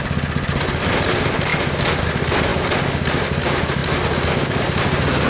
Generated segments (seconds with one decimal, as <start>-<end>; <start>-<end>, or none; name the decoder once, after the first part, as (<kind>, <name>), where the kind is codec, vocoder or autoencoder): none